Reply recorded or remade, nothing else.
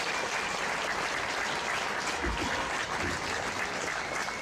recorded